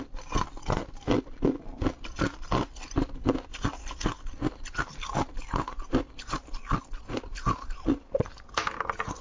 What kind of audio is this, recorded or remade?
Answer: recorded